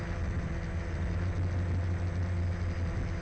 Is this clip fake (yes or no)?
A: no